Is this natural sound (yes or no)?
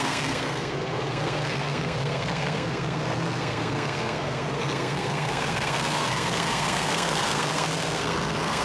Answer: no